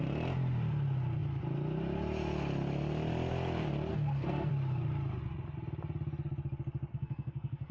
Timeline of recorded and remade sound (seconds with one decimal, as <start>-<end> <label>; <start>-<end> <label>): 0.0-3.9 recorded; 3.9-4.5 remade; 4.5-6.9 recorded; 6.9-7.7 remade